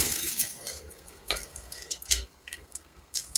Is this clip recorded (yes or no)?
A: no